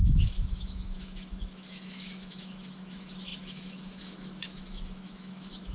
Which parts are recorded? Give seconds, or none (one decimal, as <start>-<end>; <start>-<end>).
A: none